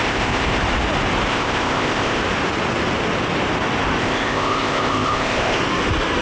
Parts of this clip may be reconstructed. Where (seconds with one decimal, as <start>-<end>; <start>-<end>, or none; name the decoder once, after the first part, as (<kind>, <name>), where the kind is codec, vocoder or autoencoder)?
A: 0.0-0.6 (codec, ZipCodec); 1.3-2.2; 4.0-5.6

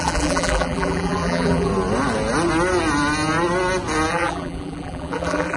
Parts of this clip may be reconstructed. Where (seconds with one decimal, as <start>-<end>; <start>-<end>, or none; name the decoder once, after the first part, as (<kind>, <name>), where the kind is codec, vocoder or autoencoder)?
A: 0.0-1.7 (vocoder, BigVGAN v2); 4.1-5.6

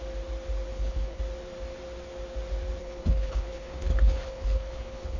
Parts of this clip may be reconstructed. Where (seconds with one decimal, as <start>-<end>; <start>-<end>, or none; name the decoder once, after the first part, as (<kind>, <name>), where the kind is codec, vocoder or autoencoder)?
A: 0.7-1.2 (codec, HILCodec); 2.8-5.2

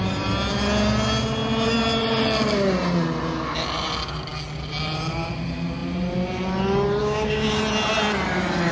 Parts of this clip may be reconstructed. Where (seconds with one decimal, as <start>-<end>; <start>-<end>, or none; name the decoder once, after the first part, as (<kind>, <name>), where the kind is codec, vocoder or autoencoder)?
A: 7.0-7.6 (codec, DAC)

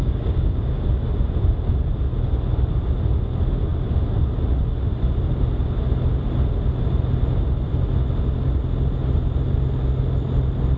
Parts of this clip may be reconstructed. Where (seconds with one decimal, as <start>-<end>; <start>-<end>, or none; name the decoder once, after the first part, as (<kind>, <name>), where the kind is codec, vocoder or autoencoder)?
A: 0.0-0.8 (codec, DAC)

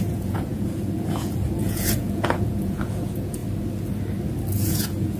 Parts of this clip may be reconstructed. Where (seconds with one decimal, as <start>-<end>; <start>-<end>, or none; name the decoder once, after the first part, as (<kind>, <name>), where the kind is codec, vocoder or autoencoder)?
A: 0.0-3.4 (vocoder, Vocos); 4.5-5.2

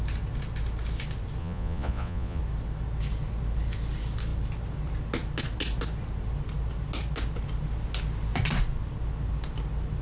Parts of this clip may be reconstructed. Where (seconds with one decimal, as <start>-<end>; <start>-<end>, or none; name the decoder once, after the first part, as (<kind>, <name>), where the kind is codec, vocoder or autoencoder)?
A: 1.4-2.4 (vocoder, Vocos)